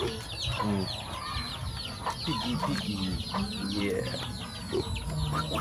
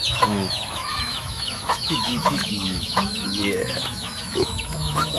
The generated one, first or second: second